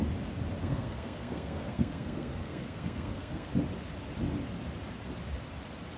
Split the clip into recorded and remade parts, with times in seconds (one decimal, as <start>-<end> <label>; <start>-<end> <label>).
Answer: 0.0-0.6 recorded; 0.6-3.5 remade; 3.5-6.0 recorded